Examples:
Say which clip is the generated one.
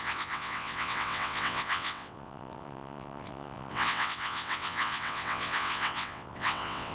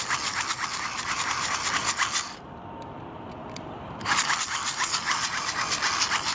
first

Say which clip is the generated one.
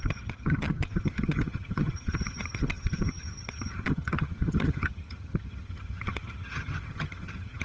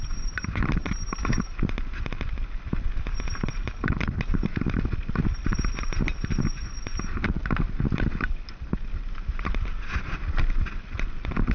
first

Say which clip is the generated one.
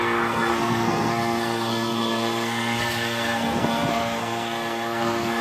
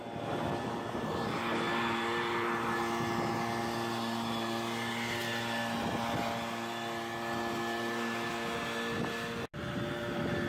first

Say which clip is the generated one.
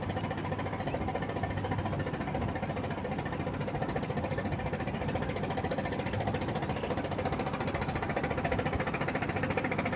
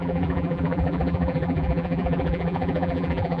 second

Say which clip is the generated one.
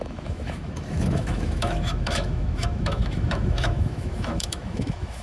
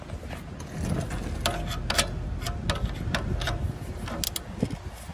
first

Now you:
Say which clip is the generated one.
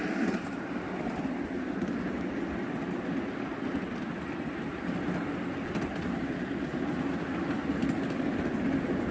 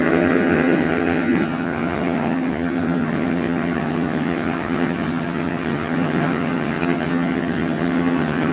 second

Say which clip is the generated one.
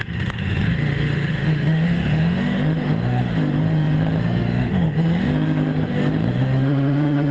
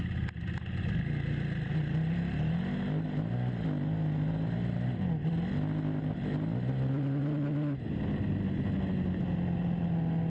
first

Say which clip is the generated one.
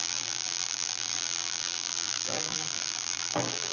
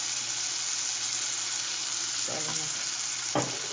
first